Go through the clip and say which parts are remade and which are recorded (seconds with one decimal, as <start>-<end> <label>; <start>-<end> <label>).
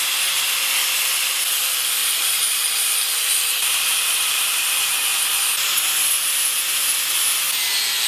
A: 0.0-2.0 recorded; 2.0-4.6 remade; 4.6-8.1 recorded